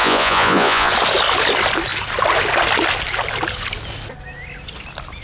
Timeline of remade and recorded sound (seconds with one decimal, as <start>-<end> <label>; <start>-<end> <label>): 0.0-0.9 remade; 0.9-5.2 recorded